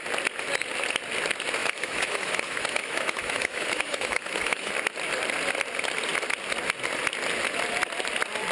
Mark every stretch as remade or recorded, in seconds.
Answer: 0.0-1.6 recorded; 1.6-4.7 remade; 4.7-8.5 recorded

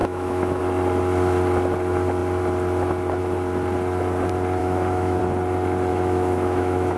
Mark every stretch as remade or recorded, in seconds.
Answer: 0.0-0.6 remade; 0.6-4.6 recorded; 4.6-5.2 remade; 5.2-5.9 recorded; 5.9-7.0 remade

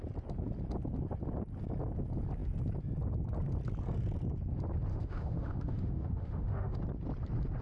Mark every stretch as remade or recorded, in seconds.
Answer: 0.0-4.9 recorded; 4.9-6.8 remade; 6.8-7.6 recorded

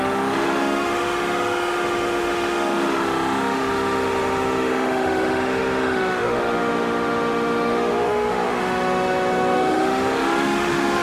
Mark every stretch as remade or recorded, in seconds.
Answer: 0.0-11.0 remade

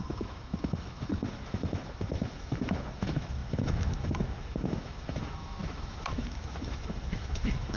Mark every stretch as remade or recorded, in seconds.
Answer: 0.0-7.8 remade